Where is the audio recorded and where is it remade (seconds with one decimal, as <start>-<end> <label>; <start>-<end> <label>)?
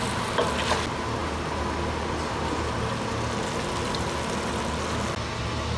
0.0-5.8 recorded